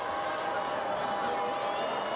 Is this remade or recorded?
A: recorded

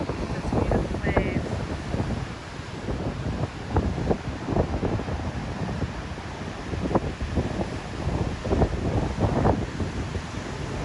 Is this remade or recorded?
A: recorded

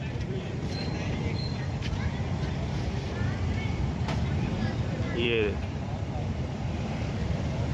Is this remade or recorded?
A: remade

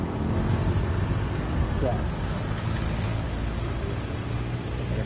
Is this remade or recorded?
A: recorded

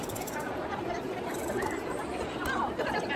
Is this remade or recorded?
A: recorded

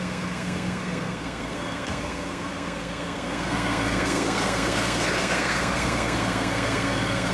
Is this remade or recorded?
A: remade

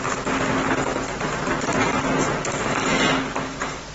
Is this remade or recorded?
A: recorded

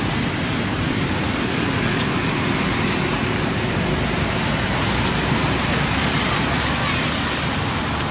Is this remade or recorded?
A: recorded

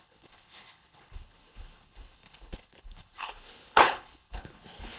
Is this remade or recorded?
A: remade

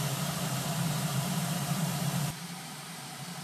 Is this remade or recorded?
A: remade